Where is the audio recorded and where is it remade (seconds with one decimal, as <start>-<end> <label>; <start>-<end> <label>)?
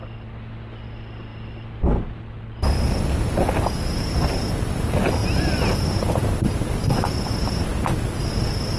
0.0-1.3 recorded; 1.3-1.9 remade; 1.9-8.8 recorded